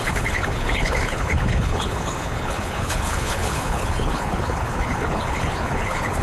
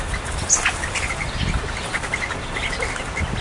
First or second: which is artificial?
first